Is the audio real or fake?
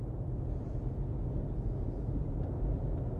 real